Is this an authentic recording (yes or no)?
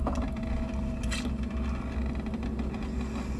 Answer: yes